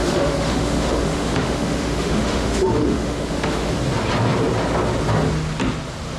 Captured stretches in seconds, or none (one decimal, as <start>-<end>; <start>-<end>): 3.7-6.2